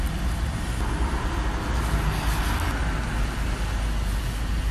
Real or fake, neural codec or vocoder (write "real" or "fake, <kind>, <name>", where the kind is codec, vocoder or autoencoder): real